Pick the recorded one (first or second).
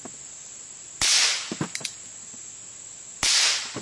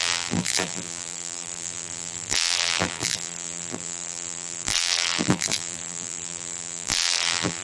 first